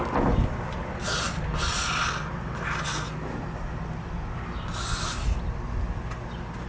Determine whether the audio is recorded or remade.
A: recorded